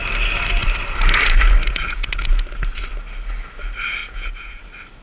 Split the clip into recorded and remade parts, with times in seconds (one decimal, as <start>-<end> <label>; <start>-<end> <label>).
0.0-4.0 recorded; 4.0-4.6 remade; 4.6-5.0 recorded